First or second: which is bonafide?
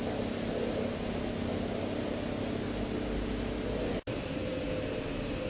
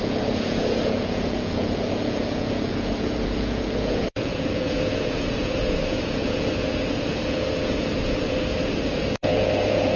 first